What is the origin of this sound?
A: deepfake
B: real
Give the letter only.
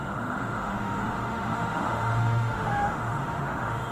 A